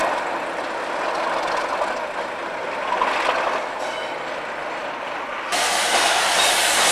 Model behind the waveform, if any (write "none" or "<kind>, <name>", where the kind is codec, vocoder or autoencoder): none